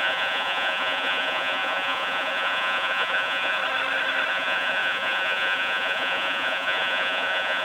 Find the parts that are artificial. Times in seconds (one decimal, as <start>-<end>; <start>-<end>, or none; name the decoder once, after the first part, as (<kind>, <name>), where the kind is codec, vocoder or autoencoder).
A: 0.0-3.6 (vocoder, Vocos); 4.3-7.6